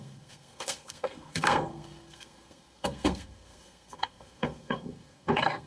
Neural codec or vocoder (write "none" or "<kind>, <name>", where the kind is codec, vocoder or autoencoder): codec, SNAC